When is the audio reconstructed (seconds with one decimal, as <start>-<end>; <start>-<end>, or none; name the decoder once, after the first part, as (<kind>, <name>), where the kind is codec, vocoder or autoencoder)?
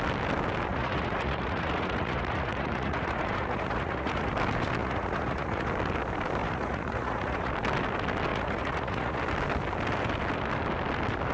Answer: 0.7-4.3 (vocoder, Vocos); 4.8-5.7; 6.4-7.5; 8.3-9.2